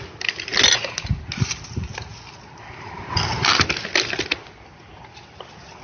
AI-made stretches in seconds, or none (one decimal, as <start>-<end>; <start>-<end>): none